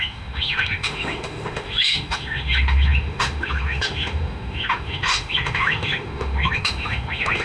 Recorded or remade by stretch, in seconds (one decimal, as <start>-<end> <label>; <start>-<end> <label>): 0.0-7.4 remade